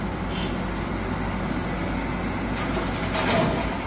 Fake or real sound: real